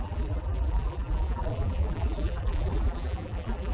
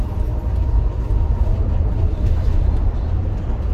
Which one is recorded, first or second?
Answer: second